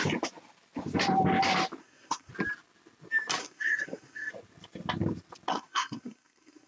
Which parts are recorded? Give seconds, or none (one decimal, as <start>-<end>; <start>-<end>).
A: 0.0-1.8; 2.3-3.4; 4.3-5.5